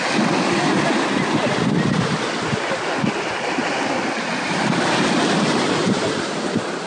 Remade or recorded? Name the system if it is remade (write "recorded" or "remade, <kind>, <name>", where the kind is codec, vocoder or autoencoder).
recorded